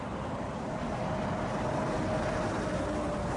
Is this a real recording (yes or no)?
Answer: yes